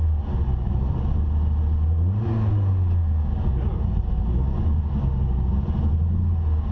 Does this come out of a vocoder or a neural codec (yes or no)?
no